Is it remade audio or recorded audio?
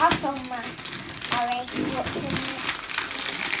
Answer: recorded